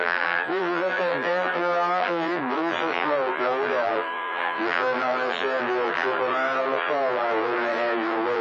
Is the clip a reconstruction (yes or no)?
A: yes